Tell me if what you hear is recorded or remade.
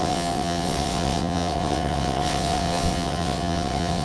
remade